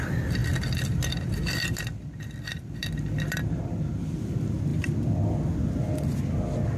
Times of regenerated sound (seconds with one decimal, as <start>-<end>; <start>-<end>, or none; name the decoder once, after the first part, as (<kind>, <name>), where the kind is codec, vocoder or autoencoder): 0.4-3.9 (vocoder, BigVGAN v2)